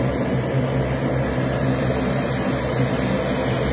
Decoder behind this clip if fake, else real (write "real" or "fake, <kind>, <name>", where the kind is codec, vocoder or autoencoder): real